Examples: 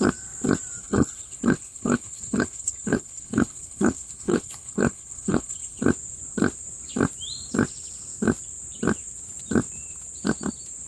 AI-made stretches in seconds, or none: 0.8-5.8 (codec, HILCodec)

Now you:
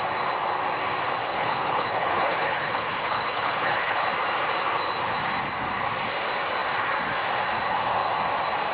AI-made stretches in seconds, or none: 1.2-4.1 (codec, HILCodec)

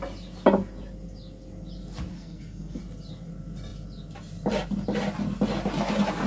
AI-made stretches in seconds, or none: 2.1-2.8 (codec, SNAC)

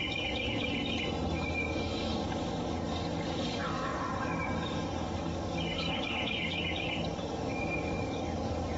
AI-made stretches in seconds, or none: 0.0-0.7 (codec, DAC); 1.7-8.8

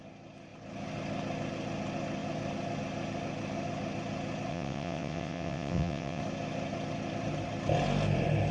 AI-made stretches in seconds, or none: 4.5-6.2 (vocoder, WaveNeXt)